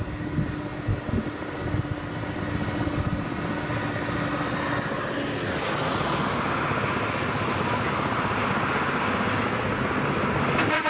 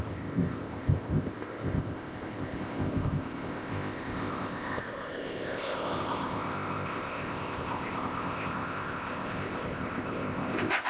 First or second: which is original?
first